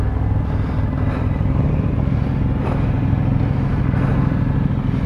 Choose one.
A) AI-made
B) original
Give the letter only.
B